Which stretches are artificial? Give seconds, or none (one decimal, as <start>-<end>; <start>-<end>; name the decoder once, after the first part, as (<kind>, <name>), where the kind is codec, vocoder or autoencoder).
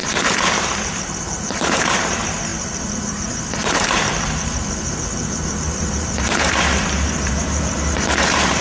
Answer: 0.6-8.6 (vocoder, BigVGAN v2)